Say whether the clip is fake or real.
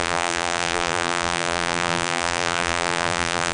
fake